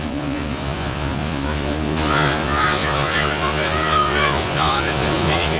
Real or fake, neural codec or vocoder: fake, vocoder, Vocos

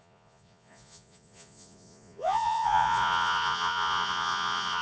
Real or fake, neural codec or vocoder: fake, vocoder, Vocos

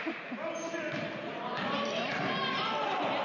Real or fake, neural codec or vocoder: real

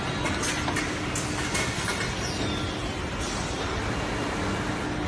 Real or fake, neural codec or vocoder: real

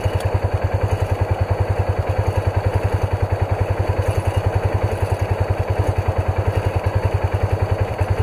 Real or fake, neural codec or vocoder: real